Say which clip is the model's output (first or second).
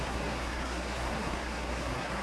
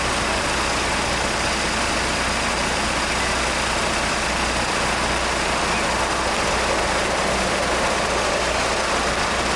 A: first